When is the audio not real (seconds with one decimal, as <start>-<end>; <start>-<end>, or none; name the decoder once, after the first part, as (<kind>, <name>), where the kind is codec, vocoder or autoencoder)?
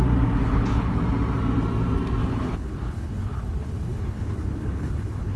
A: 0.4-1.0 (codec, HILCodec); 2.2-5.4